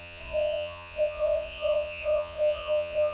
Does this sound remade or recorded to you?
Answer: remade